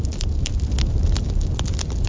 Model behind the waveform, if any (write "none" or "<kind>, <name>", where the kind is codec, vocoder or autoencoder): none